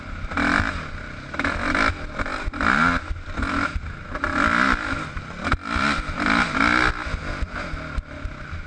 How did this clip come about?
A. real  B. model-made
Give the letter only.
A